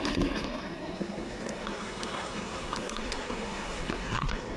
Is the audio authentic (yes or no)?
no